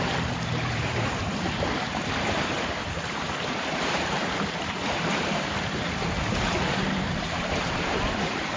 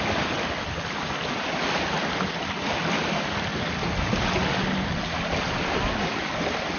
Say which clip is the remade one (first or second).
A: first